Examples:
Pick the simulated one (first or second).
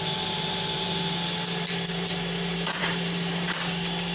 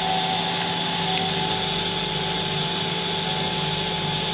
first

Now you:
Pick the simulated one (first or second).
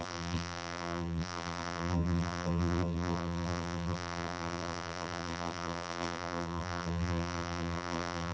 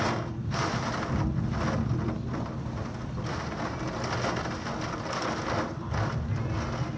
first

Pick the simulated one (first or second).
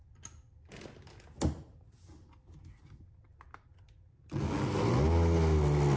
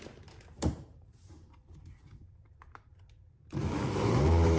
second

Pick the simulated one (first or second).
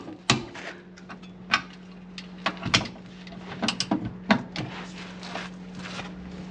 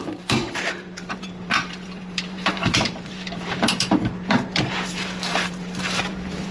second